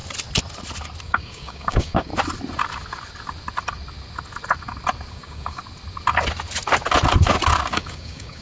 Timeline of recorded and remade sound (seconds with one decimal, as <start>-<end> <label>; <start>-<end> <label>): 0.0-1.0 recorded; 1.0-2.1 remade; 2.1-5.1 recorded; 5.1-5.6 remade; 5.6-7.7 recorded; 7.7-8.4 remade